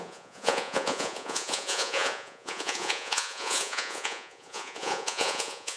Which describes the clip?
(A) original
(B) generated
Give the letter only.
B